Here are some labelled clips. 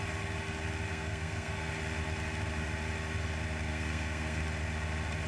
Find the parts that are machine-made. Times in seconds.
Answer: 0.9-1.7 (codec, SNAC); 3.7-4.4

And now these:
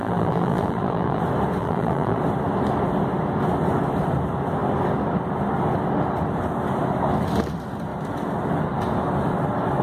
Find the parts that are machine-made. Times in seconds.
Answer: 0.0-1.2 (vocoder, BigVGAN v2); 1.6-2.2

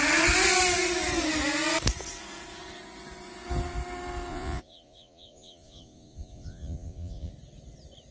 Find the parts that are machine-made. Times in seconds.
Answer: 4.3-7.3 (vocoder, Vocos)

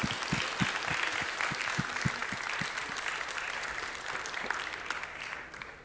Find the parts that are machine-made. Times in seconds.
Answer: none